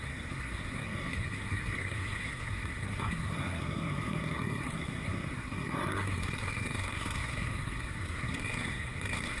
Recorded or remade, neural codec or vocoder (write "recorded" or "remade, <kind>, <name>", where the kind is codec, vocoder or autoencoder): remade, codec, SNAC